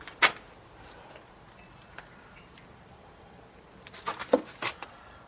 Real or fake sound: real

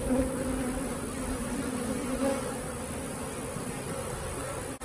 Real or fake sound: real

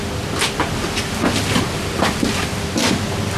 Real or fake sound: real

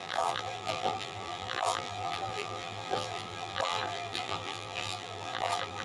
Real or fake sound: fake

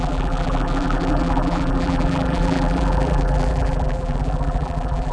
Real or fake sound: fake